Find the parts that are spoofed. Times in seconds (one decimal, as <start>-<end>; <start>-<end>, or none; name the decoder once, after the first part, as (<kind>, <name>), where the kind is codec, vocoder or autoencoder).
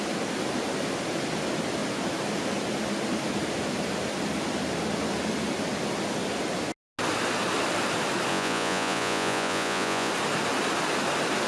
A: 8.3-10.1 (vocoder, Vocos)